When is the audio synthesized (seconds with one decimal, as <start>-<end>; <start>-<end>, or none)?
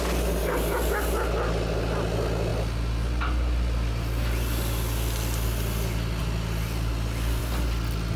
none